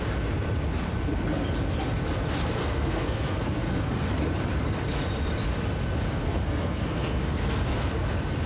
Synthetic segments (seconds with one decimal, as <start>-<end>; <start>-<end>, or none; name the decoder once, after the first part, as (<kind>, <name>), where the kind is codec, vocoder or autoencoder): 2.6-4.1 (codec, SNAC); 6.3-7.9